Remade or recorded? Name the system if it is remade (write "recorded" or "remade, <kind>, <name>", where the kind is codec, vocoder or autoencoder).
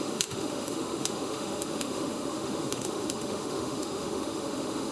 remade, autoencoder, DAC-VAE